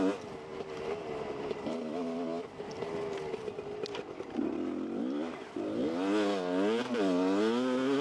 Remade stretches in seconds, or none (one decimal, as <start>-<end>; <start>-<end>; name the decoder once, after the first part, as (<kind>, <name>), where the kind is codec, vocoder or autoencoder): 0.5-1.8 (vocoder, BigVGAN v2)